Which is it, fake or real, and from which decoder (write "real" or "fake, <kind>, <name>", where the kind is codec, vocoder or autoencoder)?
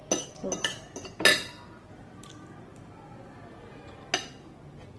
real